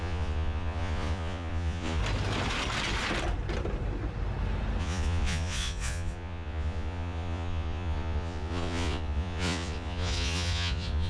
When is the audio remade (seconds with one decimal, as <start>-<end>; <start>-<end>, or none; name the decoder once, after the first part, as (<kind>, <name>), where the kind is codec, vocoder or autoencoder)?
0.0-2.0 (vocoder, Vocos); 4.8-11.1